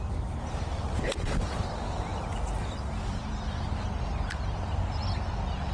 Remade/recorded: recorded